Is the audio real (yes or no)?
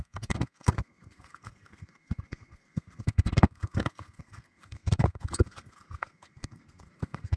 no